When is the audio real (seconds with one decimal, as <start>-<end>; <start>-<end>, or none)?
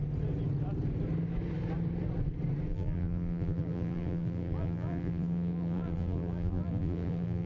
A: 0.0-2.7